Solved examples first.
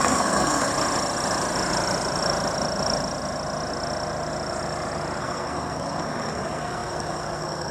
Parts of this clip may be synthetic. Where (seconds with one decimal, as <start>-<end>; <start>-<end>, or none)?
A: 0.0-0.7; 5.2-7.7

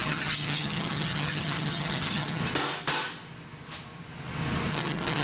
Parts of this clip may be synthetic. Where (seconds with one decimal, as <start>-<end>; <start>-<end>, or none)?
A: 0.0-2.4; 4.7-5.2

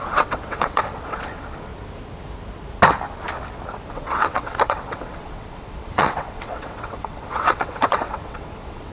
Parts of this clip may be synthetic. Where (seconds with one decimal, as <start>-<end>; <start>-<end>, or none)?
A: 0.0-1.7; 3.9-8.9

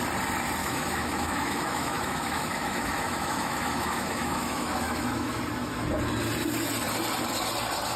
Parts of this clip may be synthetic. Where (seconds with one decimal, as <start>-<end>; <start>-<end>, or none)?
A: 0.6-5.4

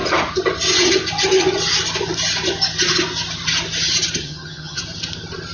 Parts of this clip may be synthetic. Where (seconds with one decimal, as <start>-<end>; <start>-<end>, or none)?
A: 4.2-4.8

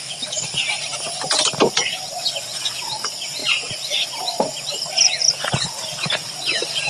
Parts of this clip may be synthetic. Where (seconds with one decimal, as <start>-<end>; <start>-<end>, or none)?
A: none